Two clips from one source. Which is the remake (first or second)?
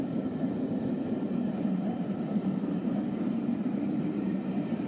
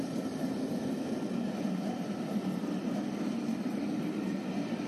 first